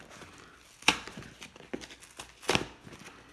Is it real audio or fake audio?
real